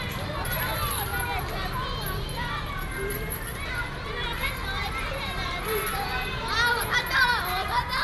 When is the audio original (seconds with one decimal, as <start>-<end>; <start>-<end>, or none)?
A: 0.0-8.0